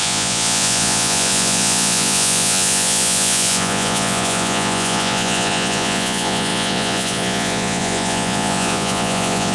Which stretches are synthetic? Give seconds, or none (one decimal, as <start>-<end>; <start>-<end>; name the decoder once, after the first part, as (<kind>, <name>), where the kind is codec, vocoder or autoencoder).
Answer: 0.0-9.5 (vocoder, Vocos)